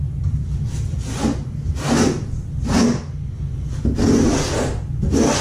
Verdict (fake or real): real